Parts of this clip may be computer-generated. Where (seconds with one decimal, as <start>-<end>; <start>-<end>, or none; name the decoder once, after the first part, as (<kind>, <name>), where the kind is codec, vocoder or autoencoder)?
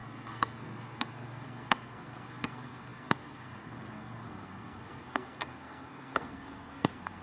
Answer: 0.0-7.2 (codec, SNAC)